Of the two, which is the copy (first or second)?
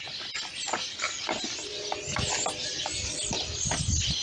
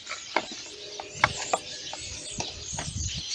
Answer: second